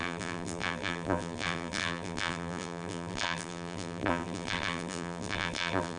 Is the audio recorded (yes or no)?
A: no